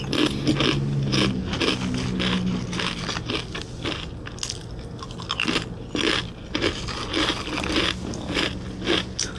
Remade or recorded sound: recorded